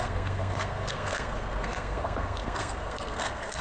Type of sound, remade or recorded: remade